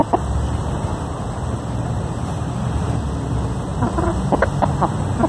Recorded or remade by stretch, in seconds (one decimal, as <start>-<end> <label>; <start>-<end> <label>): 0.0-2.8 remade; 2.8-3.7 recorded; 3.7-4.2 remade; 4.2-5.3 recorded